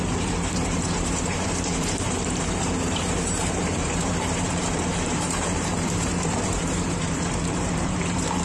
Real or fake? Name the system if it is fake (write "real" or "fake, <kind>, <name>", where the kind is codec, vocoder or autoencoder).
fake, vocoder, BigVGAN v2